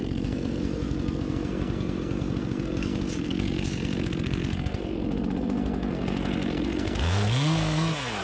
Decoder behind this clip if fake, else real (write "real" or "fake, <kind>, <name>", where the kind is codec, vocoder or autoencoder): fake, codec, SNAC